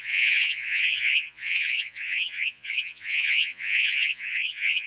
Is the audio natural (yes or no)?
no